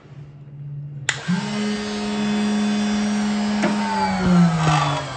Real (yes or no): yes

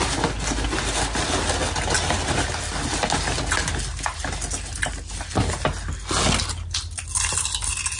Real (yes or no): yes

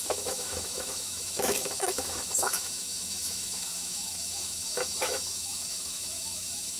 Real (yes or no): no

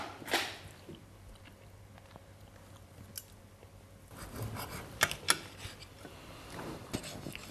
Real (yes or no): yes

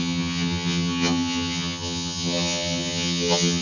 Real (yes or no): no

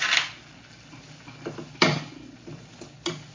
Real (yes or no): yes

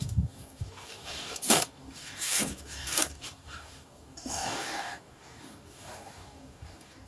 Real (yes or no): no